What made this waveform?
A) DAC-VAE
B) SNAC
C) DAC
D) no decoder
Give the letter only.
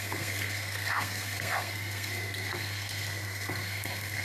B